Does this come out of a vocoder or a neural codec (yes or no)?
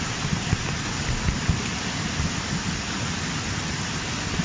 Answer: no